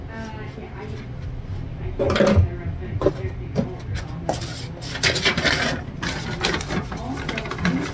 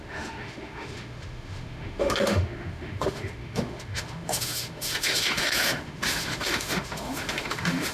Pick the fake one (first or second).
second